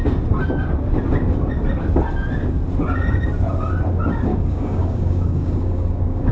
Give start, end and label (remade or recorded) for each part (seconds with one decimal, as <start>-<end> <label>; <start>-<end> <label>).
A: 0.0-4.3 recorded; 4.3-6.3 remade